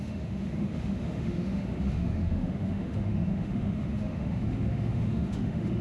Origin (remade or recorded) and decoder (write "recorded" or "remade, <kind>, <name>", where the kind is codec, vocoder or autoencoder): remade, autoencoder, DAC-VAE